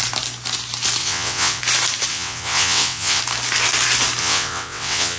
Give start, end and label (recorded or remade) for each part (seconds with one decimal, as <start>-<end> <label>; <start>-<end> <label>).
0.0-1.0 recorded; 1.0-1.6 remade; 1.6-2.1 recorded; 2.1-3.2 remade; 3.2-4.2 recorded; 4.2-5.2 remade